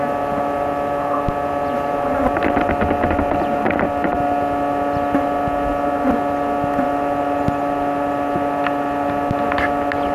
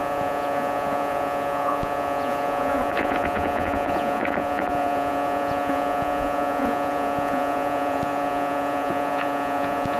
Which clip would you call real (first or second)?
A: first